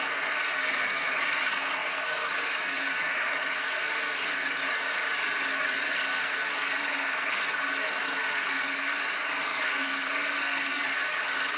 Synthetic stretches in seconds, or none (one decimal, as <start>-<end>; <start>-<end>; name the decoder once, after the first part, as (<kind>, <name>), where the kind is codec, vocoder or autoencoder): 0.0-4.6 (codec, SNAC); 5.5-11.6